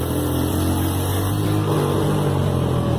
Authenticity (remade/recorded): recorded